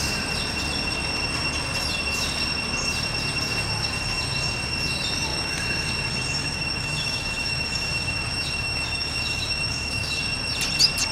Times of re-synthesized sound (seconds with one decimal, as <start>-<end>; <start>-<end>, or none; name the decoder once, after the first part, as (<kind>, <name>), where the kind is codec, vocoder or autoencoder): 5.3-5.9 (autoencoder, DAC-VAE); 6.4-10.2